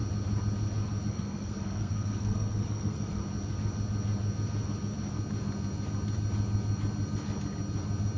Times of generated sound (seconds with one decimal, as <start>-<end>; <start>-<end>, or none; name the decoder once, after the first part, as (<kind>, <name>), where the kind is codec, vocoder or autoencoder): 1.1-3.2 (codec, SNAC)